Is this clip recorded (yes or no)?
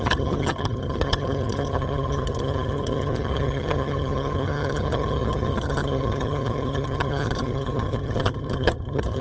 no